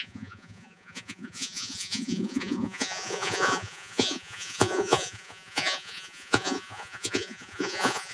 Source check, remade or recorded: remade